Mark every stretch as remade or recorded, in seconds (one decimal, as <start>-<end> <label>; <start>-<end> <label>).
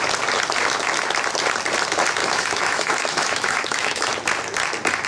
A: 0.0-2.2 recorded; 2.2-4.1 remade; 4.1-5.1 recorded